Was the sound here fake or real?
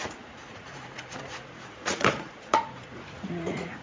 fake